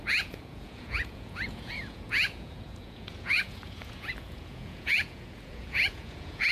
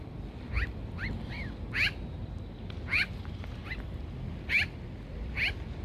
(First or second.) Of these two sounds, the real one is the second